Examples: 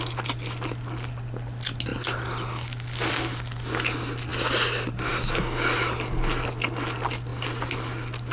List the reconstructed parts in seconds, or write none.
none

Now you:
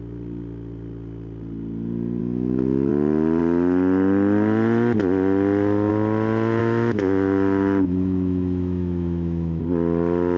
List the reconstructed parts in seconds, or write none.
2.2-2.9; 6.6-9.6

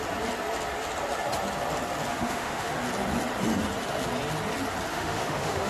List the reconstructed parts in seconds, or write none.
2.1-2.7; 4.9-5.7

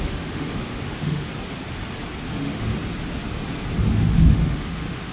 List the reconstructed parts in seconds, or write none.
0.0-1.3; 2.3-2.7; 3.9-5.1

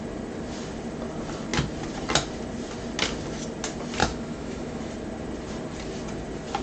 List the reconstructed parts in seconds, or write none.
4.0-4.9

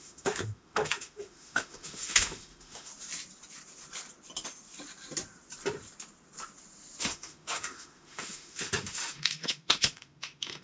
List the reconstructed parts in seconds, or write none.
0.0-2.9; 7.0-10.6

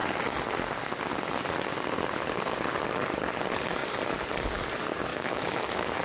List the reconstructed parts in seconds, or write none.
5.1-6.0

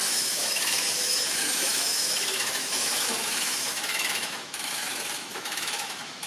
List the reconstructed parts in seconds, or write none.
0.0-6.3